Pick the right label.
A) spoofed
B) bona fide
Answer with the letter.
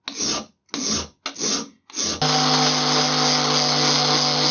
B